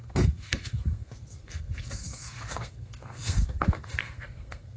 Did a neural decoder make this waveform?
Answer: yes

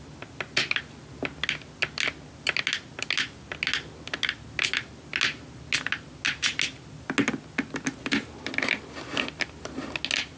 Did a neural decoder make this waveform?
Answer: no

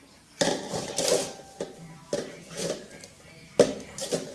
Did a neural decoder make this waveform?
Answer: no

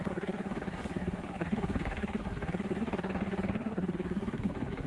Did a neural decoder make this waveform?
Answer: yes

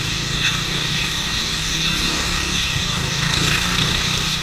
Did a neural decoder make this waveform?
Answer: yes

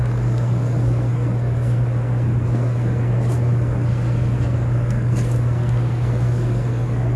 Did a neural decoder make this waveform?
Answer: yes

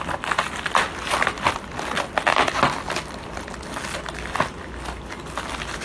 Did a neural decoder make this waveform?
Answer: no